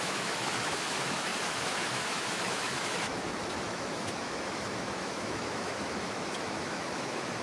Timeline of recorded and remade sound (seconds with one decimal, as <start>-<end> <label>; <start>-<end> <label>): 0.0-7.4 remade